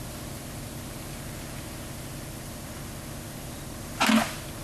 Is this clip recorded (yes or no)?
yes